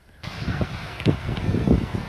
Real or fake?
fake